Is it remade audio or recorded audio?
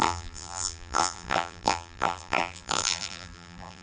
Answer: remade